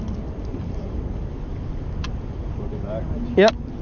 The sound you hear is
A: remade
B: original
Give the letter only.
B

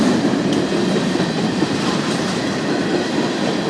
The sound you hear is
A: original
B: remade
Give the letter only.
A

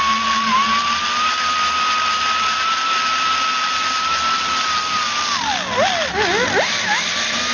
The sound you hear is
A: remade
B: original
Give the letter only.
B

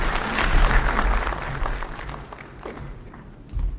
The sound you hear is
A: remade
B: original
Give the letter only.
B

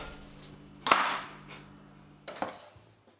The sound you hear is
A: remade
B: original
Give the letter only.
B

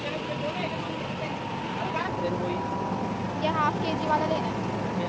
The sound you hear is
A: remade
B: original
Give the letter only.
B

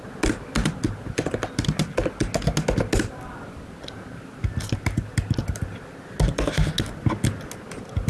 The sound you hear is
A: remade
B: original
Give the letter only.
B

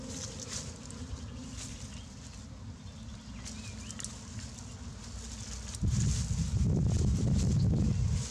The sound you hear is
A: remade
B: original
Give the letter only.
B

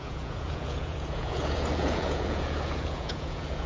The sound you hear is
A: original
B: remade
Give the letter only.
B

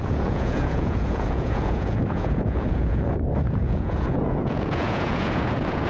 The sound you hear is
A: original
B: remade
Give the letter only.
B